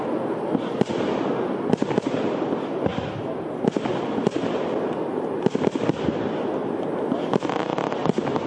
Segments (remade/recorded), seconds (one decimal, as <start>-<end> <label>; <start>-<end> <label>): 0.0-8.5 recorded